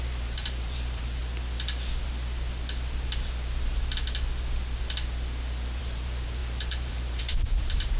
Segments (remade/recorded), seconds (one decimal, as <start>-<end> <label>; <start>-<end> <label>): 0.0-1.2 remade; 1.2-5.8 recorded; 5.8-8.0 remade